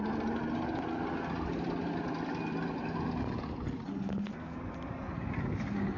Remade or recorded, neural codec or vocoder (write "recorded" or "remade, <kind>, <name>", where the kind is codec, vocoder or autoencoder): recorded